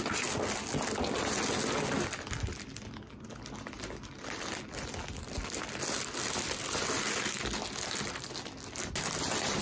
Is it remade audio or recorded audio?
recorded